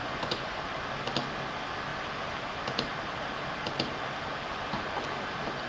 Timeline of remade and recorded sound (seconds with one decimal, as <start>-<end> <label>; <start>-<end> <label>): 0.0-0.6 remade; 0.6-5.7 recorded